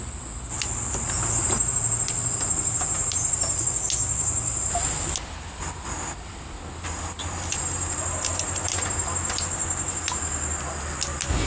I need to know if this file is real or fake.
real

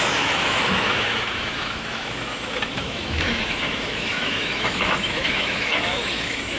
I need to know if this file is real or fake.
fake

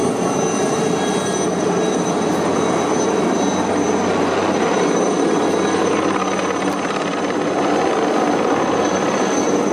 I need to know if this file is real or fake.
real